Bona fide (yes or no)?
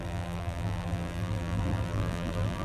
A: no